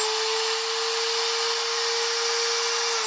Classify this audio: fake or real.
real